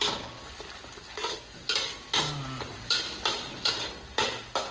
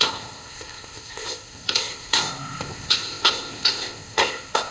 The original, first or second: first